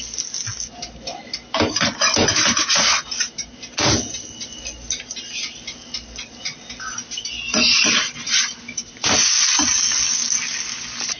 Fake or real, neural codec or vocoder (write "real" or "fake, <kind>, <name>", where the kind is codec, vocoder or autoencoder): real